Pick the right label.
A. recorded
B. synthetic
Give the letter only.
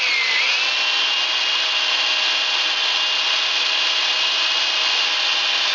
A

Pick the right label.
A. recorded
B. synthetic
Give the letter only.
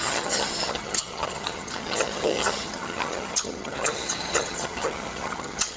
B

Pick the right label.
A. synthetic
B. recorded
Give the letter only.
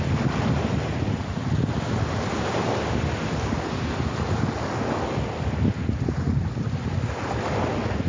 B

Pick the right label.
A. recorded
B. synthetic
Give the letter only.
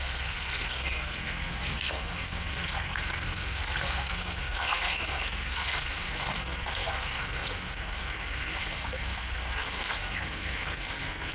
B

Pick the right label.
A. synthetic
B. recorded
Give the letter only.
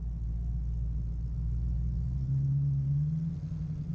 B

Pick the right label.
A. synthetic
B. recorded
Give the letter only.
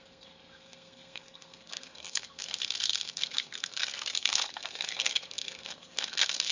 A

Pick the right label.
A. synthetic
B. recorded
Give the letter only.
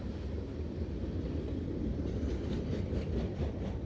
A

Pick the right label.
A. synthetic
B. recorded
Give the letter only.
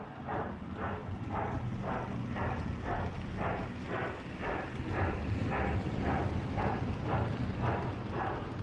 B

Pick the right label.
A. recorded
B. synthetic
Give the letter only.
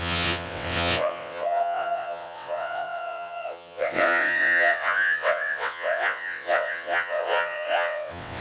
B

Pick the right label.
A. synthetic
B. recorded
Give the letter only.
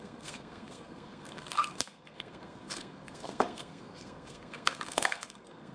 A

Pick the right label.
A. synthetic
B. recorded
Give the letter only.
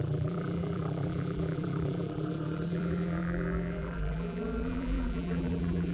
A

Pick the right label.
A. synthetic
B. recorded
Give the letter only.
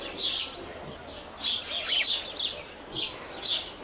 B